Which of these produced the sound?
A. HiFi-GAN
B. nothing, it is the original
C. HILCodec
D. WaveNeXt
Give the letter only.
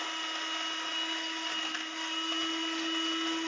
B